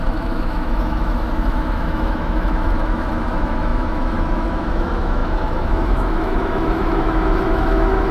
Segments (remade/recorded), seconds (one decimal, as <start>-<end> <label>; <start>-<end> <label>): 0.0-8.1 remade